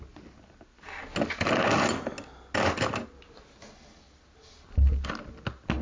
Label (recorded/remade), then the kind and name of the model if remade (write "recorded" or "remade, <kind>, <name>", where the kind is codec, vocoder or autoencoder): recorded